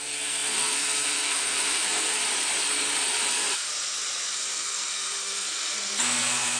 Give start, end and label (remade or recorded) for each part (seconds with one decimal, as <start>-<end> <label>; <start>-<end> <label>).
0.0-2.2 remade; 2.2-3.3 recorded; 3.3-3.7 remade; 3.7-4.3 recorded; 4.3-6.6 remade

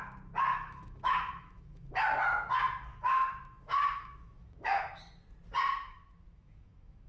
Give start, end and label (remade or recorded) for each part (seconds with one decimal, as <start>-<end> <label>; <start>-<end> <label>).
0.0-0.5 recorded; 0.5-1.9 remade; 1.9-2.9 recorded; 2.9-5.0 remade; 5.0-5.7 recorded; 5.7-7.1 remade